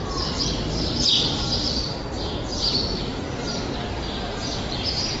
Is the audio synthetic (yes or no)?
no